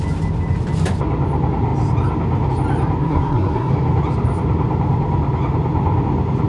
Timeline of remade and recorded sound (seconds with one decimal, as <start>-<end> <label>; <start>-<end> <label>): 0.0-3.0 recorded; 3.0-3.7 remade; 3.7-6.5 recorded